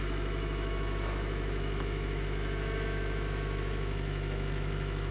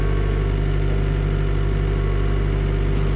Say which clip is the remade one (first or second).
first